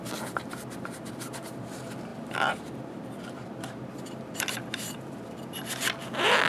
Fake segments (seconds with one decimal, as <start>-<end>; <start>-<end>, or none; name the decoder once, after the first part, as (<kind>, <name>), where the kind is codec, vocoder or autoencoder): 2.1-6.0 (vocoder, BigVGAN v2)